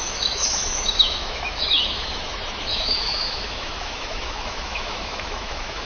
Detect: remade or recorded remade